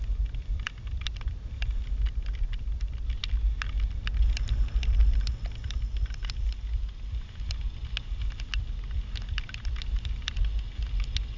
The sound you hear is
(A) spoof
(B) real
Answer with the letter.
B